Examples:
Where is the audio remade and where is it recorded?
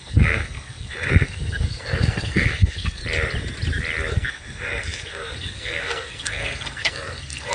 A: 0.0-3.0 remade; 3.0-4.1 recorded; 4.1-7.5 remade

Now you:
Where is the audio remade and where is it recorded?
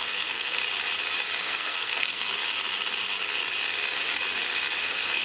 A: 0.0-0.6 remade; 0.6-1.4 recorded; 1.4-2.3 remade; 2.3-4.8 recorded; 4.8-5.2 remade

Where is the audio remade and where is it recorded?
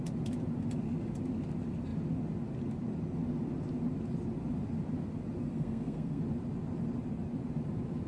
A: 0.0-5.4 recorded; 5.4-6.2 remade; 6.2-8.1 recorded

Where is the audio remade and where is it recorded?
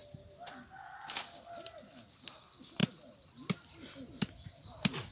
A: 0.0-5.1 recorded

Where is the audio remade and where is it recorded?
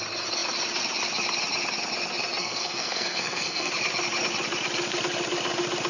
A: 0.0-2.4 recorded; 2.4-3.7 remade; 3.7-5.9 recorded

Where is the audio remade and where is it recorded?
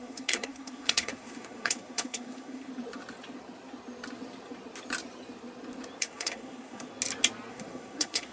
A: 0.0-2.7 remade; 2.7-6.0 recorded; 6.0-6.9 remade; 6.9-7.5 recorded; 7.5-8.3 remade